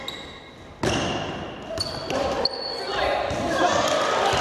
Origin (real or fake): real